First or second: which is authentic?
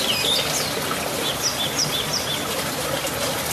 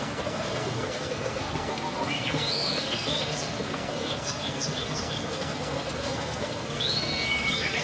first